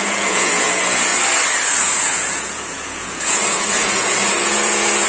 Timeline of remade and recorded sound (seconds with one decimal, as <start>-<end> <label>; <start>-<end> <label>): 0.0-1.1 remade; 1.1-1.8 recorded; 1.8-5.1 remade